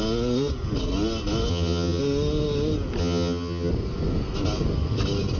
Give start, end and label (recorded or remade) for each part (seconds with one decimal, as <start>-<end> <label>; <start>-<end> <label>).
0.0-1.5 recorded; 1.5-2.0 remade; 2.0-3.0 recorded; 3.0-3.7 remade; 3.7-5.4 recorded